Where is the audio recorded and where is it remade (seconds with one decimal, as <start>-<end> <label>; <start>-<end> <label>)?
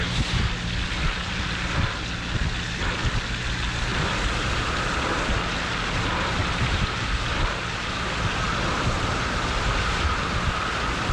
0.0-3.9 recorded; 3.9-5.4 remade; 5.4-6.4 recorded; 6.4-10.5 remade; 10.5-11.1 recorded